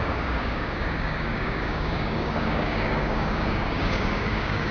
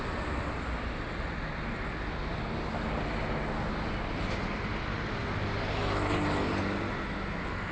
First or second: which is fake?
first